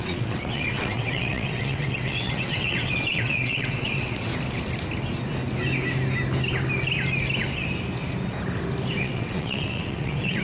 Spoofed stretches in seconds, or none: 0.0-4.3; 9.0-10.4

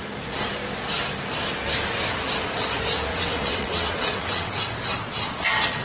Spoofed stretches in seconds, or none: 3.1-4.5

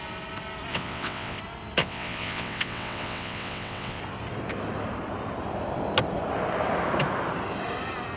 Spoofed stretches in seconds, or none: 0.7-1.4; 1.8-4.0

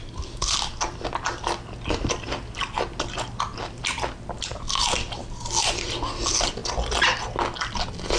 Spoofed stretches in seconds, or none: none

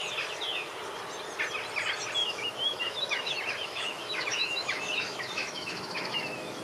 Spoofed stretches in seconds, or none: 2.2-6.6

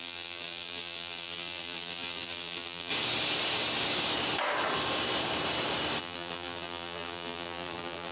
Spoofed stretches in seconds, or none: 0.0-2.9; 6.0-8.1

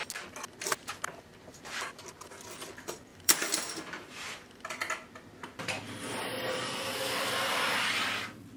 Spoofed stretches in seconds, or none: 3.1-4.3

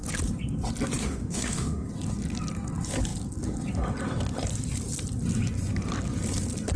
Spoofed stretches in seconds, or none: 1.0-1.9